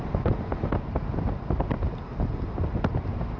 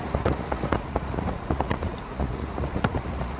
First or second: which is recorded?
first